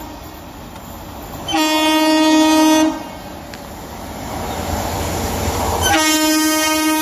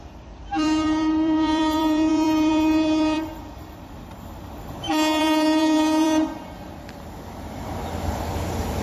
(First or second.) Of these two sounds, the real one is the first